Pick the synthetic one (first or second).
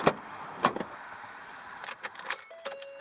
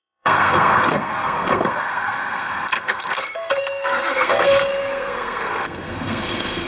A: second